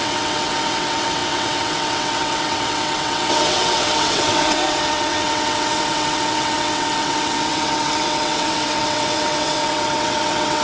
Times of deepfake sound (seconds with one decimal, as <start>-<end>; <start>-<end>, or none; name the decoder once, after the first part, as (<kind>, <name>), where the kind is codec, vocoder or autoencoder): 0.0-10.6 (vocoder, WaveNeXt)